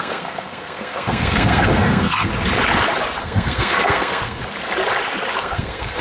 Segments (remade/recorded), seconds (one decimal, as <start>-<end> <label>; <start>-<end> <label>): 0.0-2.3 remade; 2.3-3.2 recorded; 3.2-4.4 remade; 4.4-5.4 recorded; 5.4-6.0 remade

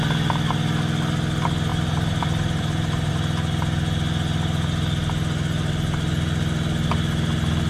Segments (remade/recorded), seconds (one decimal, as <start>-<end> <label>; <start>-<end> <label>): 0.0-1.7 recorded; 1.7-3.1 remade; 3.1-7.7 recorded

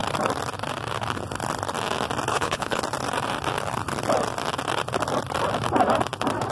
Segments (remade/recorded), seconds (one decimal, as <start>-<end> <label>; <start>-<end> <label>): 0.0-2.3 recorded; 2.3-2.8 remade; 2.8-6.5 recorded

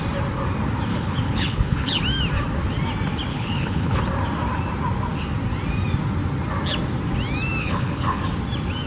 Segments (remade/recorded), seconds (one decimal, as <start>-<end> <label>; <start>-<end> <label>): 0.0-0.9 recorded; 0.9-2.0 remade; 2.0-3.3 recorded; 3.3-4.0 remade; 4.0-7.6 recorded; 7.6-8.2 remade; 8.2-8.9 recorded

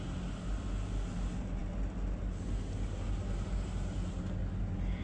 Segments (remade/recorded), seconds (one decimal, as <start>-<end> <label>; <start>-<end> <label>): 0.0-5.0 recorded

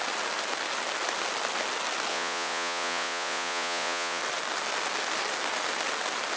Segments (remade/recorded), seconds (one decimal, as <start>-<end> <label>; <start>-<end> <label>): 0.0-2.1 recorded; 2.1-4.2 remade; 4.2-6.4 recorded